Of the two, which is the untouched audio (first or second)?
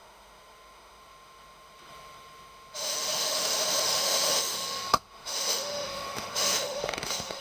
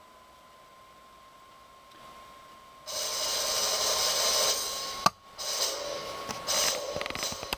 second